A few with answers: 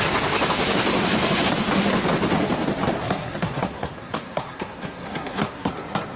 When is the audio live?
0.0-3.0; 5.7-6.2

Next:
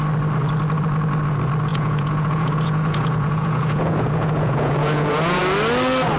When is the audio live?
0.0-1.7; 5.4-6.2

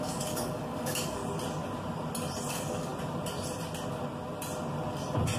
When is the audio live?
1.2-2.5; 2.9-5.4

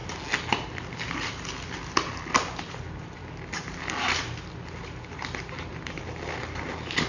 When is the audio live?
0.0-1.3; 3.2-6.0

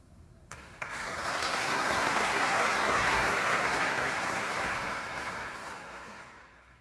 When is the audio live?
none